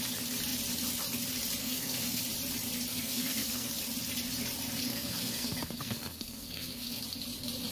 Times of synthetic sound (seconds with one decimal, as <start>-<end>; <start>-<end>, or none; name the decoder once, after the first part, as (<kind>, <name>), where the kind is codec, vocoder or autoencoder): 1.6-2.2 (codec, SNAC); 2.9-3.7; 4.9-7.0